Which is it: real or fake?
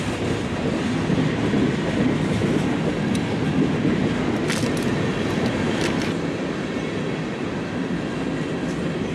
real